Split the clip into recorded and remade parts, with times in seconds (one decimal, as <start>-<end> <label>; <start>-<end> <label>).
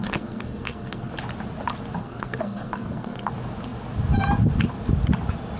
0.0-1.1 remade; 1.1-2.0 recorded; 2.0-3.3 remade; 3.3-5.6 recorded